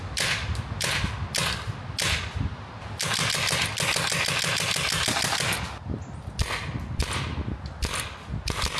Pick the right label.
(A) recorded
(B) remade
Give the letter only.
A